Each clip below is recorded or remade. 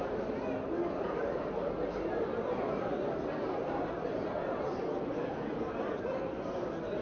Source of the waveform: recorded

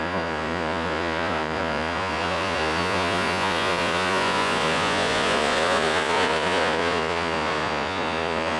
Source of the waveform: remade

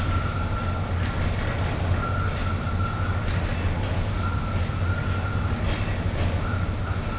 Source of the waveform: recorded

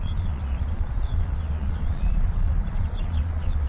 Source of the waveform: remade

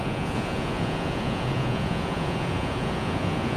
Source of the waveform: remade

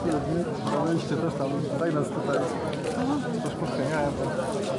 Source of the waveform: recorded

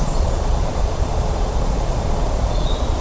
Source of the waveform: remade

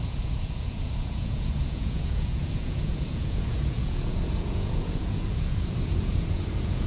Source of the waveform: remade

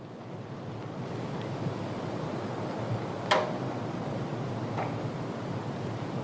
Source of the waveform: recorded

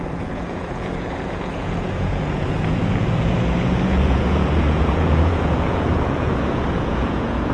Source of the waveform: remade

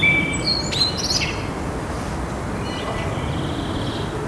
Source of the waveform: recorded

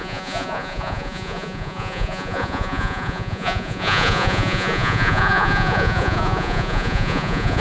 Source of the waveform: remade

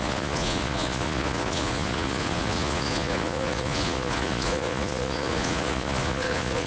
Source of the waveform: remade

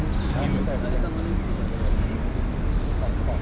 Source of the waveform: recorded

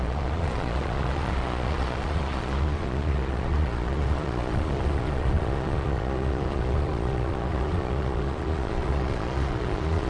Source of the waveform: remade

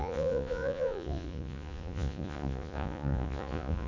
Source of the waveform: remade